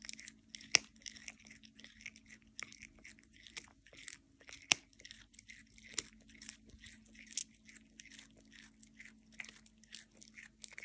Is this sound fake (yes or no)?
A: no